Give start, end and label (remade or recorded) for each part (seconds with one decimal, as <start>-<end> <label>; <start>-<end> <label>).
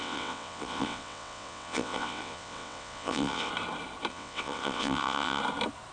0.0-3.5 remade; 3.5-4.1 recorded; 4.1-5.4 remade; 5.4-5.9 recorded